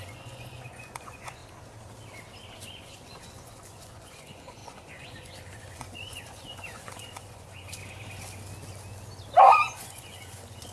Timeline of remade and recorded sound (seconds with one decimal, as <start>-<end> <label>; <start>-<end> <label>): 0.0-1.4 remade; 1.4-2.7 recorded; 2.7-7.8 remade; 7.8-9.4 recorded; 9.4-10.7 remade